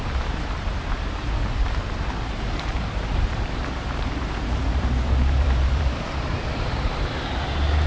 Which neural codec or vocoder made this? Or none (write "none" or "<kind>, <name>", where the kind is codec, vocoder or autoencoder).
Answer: vocoder, BigVGAN v2